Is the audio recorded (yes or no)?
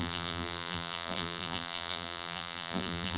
no